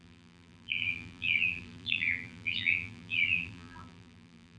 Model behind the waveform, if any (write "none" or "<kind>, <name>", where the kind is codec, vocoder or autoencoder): vocoder, BigVGAN v2